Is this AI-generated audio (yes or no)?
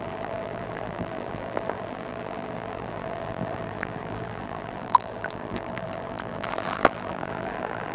yes